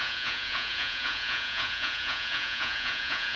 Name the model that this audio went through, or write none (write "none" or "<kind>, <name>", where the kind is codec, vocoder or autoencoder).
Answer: vocoder, Vocos